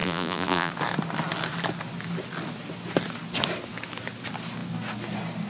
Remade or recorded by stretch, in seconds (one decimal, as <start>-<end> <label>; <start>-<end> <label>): 0.0-0.7 remade; 0.7-5.5 recorded